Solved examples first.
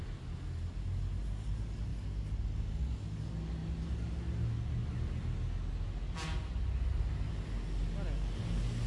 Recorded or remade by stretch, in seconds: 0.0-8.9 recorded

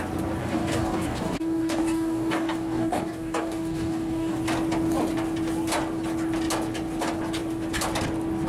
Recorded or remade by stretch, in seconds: 0.0-0.4 recorded; 0.4-4.4 remade; 4.4-8.5 recorded